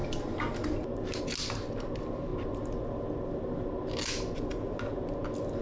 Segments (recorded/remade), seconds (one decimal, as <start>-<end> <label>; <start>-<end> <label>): 0.0-5.6 recorded